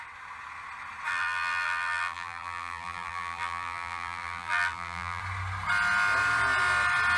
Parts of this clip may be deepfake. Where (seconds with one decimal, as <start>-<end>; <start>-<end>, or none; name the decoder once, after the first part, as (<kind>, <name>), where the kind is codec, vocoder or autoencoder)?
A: 1.1-5.2 (vocoder, BigVGAN v2)